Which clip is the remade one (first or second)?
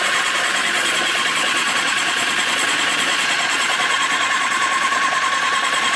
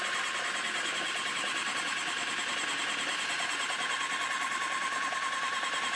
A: first